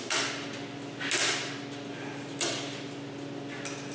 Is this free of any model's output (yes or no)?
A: yes